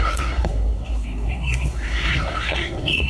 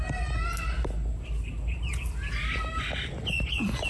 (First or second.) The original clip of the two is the second